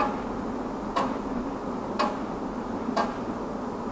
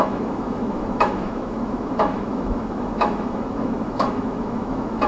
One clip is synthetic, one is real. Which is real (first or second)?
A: first